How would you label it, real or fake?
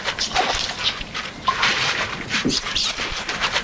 fake